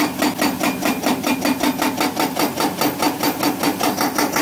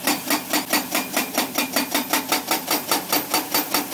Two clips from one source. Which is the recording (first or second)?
first